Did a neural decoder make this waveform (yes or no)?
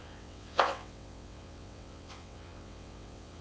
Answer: yes